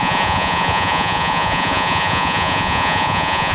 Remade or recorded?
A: remade